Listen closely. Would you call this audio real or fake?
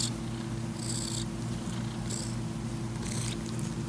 real